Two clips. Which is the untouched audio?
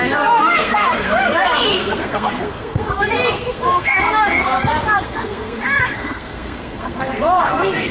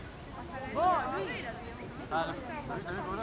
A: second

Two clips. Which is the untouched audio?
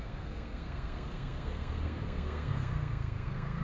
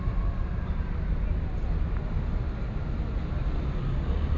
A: second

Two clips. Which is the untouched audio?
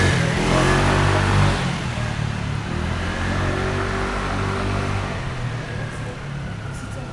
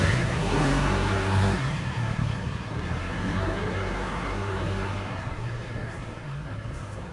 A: first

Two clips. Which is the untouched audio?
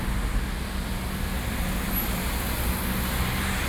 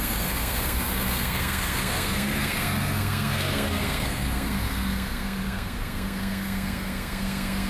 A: first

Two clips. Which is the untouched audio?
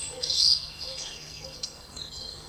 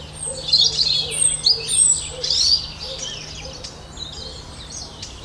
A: second